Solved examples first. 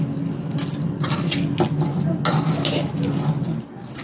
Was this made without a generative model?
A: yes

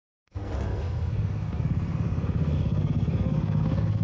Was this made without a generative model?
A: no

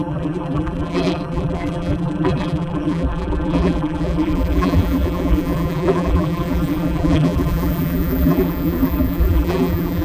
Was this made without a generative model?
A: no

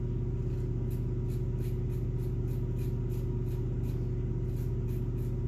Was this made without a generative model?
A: yes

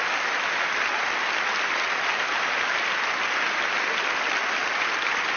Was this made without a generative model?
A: yes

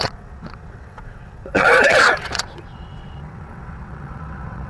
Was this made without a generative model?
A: no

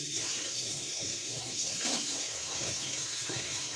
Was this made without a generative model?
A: no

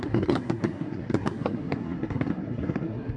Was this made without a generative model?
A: no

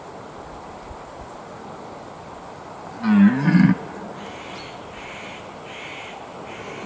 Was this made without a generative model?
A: yes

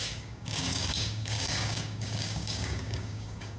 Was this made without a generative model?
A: no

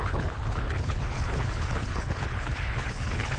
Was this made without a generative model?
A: no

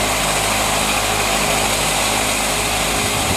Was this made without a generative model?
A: yes